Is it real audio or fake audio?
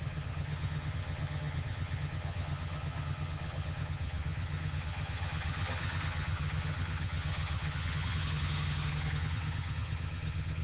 fake